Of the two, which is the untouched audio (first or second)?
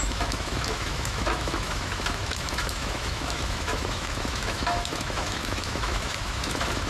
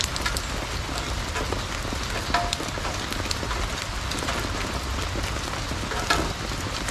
second